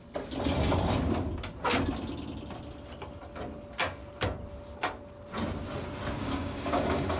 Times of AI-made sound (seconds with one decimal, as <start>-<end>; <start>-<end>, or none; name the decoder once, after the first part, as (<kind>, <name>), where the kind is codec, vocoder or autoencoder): 6.2-7.2 (codec, DAC)